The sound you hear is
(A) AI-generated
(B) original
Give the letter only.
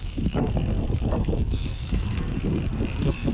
A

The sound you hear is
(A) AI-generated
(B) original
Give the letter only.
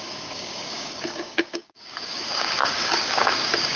A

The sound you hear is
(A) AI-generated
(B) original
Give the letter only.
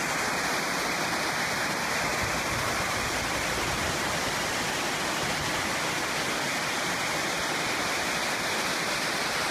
B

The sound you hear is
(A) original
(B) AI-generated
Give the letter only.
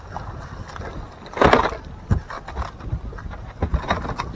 A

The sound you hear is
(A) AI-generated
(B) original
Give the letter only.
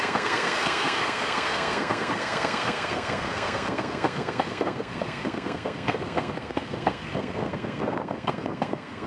A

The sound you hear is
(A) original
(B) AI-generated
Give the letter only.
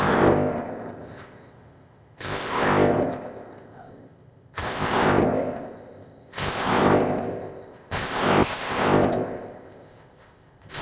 B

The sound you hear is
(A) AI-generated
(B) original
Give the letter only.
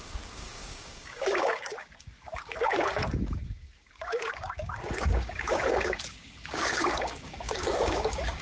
A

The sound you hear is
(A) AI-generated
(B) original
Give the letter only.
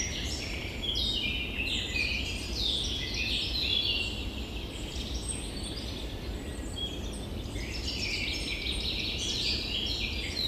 B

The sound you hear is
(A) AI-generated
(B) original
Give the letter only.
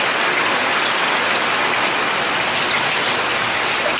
B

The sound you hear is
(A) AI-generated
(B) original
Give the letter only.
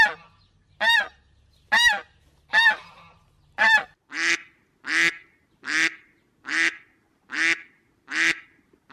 B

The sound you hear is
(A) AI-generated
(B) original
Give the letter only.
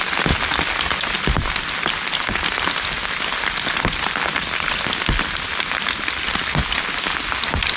B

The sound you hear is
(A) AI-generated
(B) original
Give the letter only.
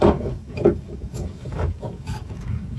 A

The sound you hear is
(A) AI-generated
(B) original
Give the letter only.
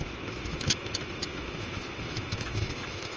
A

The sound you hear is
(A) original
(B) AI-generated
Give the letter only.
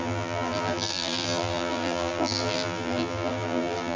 B